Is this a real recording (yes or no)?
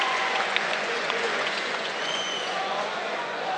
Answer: no